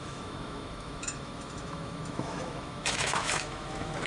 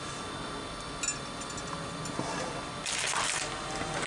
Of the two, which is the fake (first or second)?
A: first